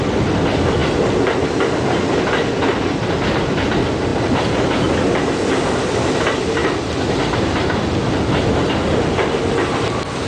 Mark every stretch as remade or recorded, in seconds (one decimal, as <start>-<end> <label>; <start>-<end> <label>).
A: 0.0-10.3 recorded